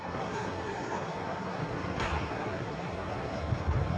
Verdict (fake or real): fake